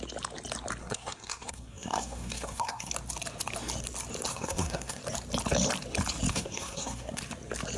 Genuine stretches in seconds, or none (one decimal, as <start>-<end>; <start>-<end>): 0.0-0.8; 2.9-4.3; 5.0-6.3; 7.2-7.8